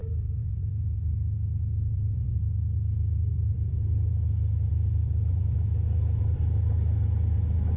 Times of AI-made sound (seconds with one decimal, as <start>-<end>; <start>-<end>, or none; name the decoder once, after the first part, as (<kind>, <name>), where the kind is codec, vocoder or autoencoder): 0.0-0.8 (vocoder, BigVGAN v2); 1.9-2.4; 3.3-4.1; 4.7-6.4